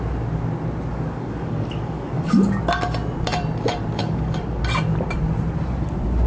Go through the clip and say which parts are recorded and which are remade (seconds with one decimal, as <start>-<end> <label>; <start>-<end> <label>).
0.0-0.9 recorded; 0.9-2.6 remade; 2.6-4.0 recorded; 4.0-4.6 remade; 4.6-6.3 recorded